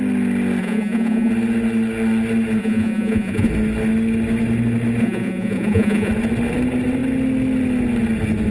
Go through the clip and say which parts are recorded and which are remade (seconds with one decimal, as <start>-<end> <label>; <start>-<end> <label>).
0.0-0.6 recorded; 0.6-1.3 remade; 1.3-2.6 recorded; 2.6-3.5 remade; 3.5-5.0 recorded; 5.0-6.1 remade; 6.1-8.5 recorded